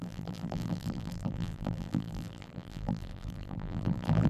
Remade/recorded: remade